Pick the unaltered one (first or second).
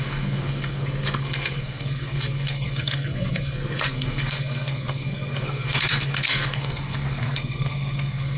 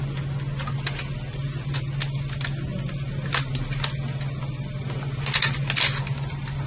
second